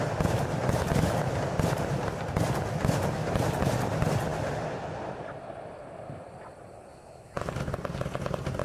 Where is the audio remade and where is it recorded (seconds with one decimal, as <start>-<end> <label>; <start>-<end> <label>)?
0.0-6.9 recorded; 6.9-7.5 remade; 7.5-8.6 recorded